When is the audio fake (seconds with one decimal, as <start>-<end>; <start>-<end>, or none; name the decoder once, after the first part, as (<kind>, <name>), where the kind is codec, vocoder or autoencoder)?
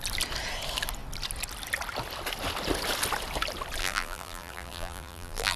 3.8-5.6 (vocoder, BigVGAN v2)